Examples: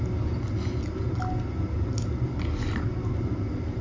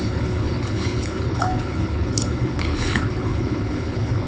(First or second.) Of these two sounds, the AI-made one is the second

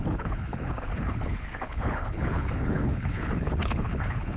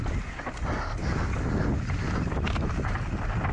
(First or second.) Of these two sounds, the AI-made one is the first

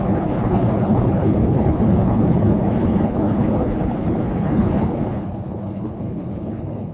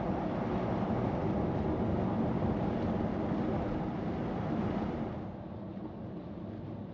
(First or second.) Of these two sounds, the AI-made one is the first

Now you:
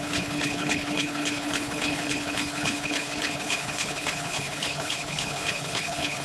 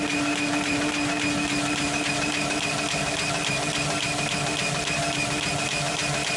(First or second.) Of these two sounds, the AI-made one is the first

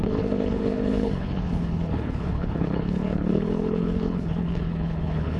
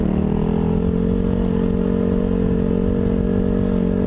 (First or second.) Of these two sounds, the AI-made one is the first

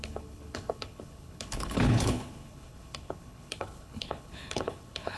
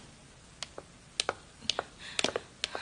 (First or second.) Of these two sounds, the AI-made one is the first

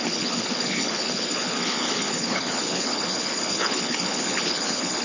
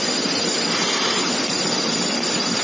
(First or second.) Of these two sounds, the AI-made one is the first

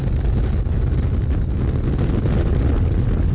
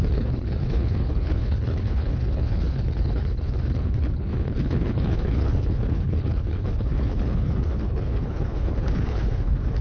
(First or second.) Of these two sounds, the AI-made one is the second